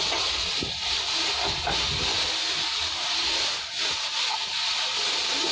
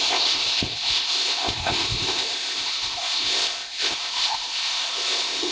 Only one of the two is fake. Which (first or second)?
second